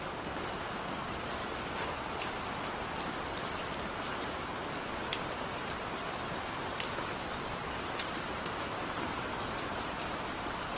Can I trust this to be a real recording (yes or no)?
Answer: yes